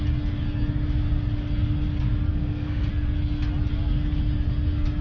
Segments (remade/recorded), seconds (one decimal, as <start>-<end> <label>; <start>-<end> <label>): 0.0-2.3 recorded; 2.3-2.9 remade; 2.9-5.0 recorded